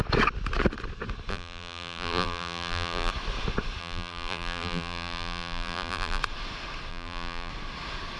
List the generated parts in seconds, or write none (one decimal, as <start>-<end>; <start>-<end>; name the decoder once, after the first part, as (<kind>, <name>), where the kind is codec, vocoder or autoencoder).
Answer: 1.3-3.1 (vocoder, BigVGAN v2); 3.8-6.2; 6.9-7.5